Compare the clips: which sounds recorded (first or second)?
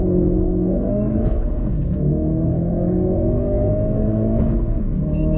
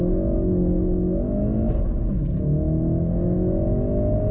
second